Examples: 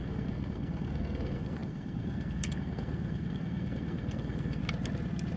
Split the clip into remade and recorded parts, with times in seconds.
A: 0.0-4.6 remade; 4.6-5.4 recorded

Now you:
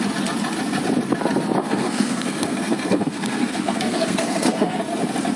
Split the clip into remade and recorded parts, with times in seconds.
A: 0.0-1.6 recorded; 1.6-4.8 remade; 4.8-5.4 recorded

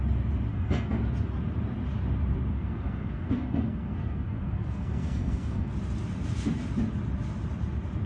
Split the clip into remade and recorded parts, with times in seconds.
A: 0.0-0.5 recorded; 0.5-1.0 remade; 1.0-2.5 recorded; 2.5-5.7 remade; 5.7-8.1 recorded

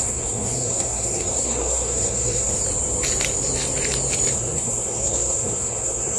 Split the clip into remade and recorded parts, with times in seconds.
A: 0.0-2.5 remade; 2.5-4.3 recorded; 4.3-6.2 remade